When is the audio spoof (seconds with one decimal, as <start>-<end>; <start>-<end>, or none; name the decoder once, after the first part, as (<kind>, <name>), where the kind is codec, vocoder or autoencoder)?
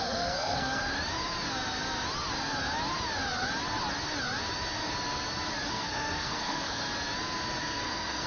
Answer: 0.0-0.8 (codec, SNAC); 5.7-6.9; 7.6-8.3